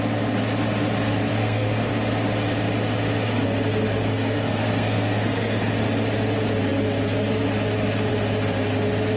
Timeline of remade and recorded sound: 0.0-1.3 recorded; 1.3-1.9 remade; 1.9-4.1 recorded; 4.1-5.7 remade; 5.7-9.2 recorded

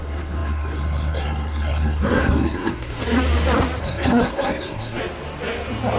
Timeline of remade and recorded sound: 0.0-3.0 remade; 3.0-3.8 recorded; 3.8-5.0 remade; 5.0-6.0 recorded

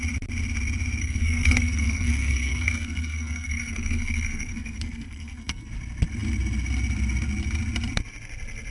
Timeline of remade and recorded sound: 0.0-1.0 recorded; 1.0-5.7 remade; 5.7-8.7 recorded

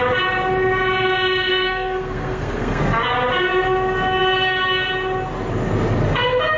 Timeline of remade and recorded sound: 0.0-1.5 recorded; 1.5-2.8 remade; 2.8-6.6 recorded

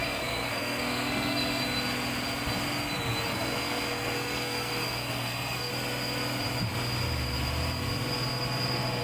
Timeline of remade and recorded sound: 0.0-1.6 remade; 1.6-3.3 recorded; 3.3-5.7 remade; 5.7-9.0 recorded

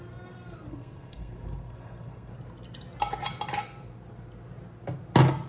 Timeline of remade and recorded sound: 0.0-0.7 recorded; 0.7-2.3 remade; 2.3-5.5 recorded